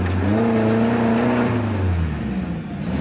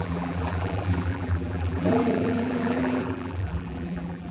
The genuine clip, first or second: first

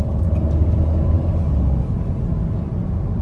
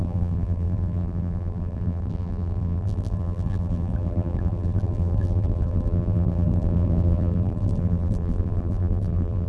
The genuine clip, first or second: first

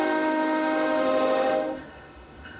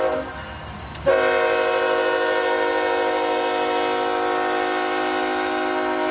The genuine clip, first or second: second